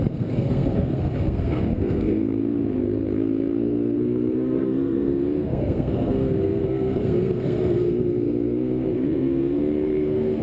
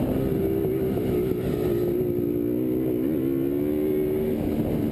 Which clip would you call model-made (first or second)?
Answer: first